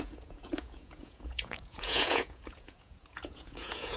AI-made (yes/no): yes